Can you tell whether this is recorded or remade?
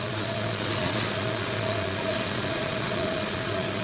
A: remade